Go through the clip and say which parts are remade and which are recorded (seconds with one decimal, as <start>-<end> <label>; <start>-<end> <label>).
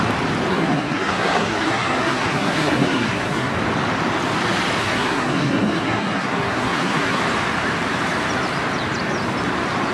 0.0-0.5 recorded; 0.5-3.5 remade; 3.5-4.8 recorded; 4.8-7.2 remade; 7.2-9.9 recorded